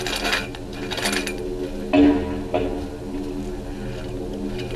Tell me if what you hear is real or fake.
real